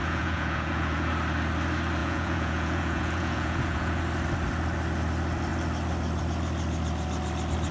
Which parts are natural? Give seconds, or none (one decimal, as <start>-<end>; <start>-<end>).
1.1-2.0; 4.0-7.7